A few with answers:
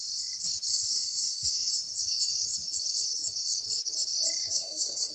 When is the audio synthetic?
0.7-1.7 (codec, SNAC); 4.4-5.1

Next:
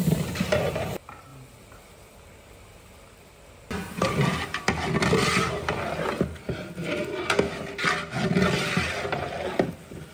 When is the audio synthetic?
none

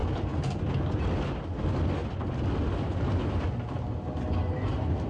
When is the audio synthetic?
none

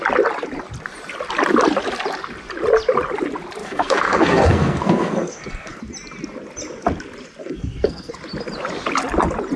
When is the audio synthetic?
3.6-5.8 (codec, SNAC); 7.4-8.1